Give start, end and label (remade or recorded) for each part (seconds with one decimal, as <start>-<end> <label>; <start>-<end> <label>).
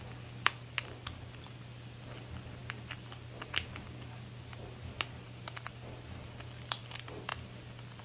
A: 0.0-0.8 recorded; 0.8-1.7 remade; 1.7-2.6 recorded; 2.6-6.8 remade; 6.8-8.0 recorded